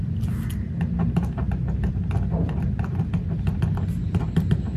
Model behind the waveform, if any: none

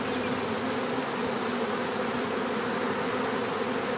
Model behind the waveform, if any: none